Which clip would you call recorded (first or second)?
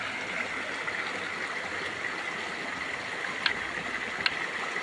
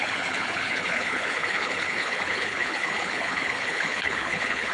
first